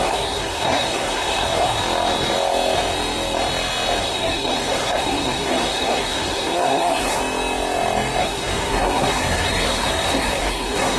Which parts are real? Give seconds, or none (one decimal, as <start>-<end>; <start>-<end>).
1.8-4.0; 7.2-8.2